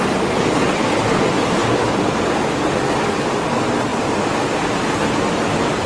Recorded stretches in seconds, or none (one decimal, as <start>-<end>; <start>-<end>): 0.0-1.6; 2.4-3.9